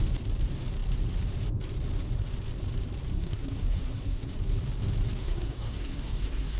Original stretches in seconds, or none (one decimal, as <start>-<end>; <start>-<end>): 0.0-3.1; 4.3-5.2